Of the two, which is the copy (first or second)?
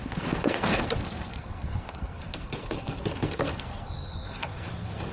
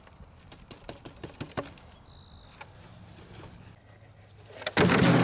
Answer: first